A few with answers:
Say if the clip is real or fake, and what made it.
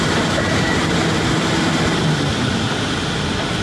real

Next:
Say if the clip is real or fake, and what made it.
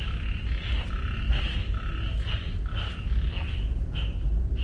real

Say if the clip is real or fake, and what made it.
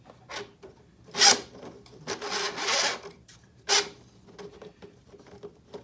real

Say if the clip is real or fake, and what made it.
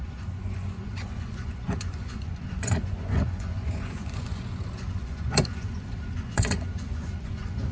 fake, vocoder, Vocos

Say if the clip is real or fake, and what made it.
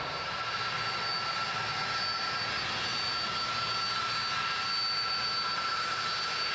real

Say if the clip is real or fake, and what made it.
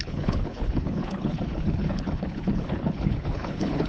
fake, codec, HILCodec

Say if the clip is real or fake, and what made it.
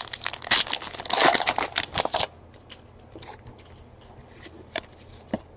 real